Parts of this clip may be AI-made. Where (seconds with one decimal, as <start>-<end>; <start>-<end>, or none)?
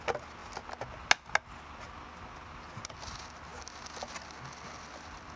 none